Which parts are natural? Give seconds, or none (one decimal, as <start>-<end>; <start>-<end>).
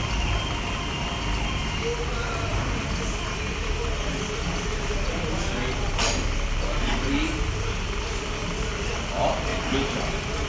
0.0-9.5; 10.0-10.5